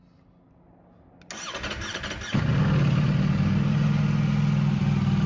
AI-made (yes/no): no